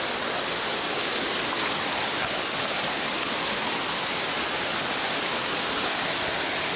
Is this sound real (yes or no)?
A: yes